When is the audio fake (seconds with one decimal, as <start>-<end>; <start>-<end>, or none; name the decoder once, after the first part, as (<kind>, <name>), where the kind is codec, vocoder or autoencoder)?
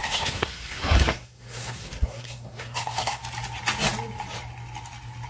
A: 0.0-3.2 (codec, SNAC)